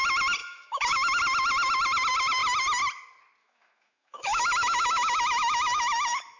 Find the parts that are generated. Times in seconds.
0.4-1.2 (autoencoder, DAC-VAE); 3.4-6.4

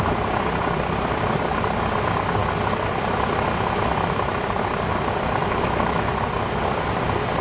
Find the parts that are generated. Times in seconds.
5.4-6.2 (autoencoder, DAC-VAE)

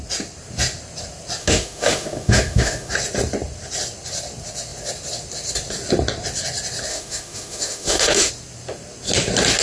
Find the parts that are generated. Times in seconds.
1.4-2.9 (autoencoder, DAC-VAE); 6.9-8.3